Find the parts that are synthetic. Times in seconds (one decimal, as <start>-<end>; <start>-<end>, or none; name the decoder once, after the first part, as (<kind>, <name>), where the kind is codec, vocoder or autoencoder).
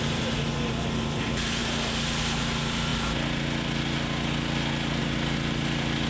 none